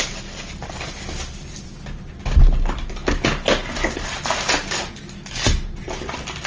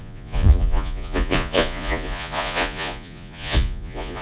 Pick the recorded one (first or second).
first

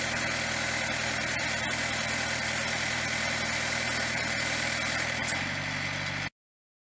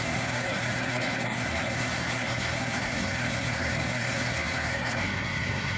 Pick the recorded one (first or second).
first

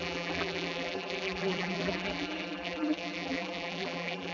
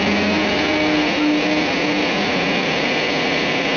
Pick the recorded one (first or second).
second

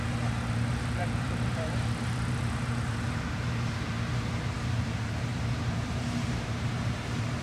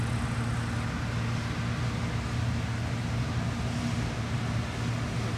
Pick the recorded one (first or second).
second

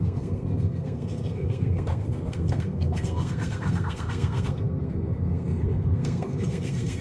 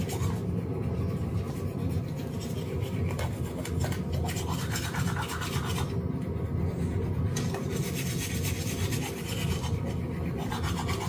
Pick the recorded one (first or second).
second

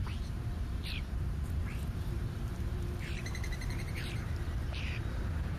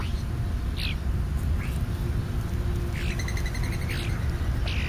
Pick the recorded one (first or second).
second